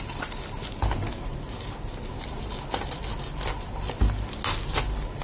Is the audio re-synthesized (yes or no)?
no